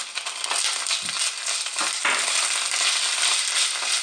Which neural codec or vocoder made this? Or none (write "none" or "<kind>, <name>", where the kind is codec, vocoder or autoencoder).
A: none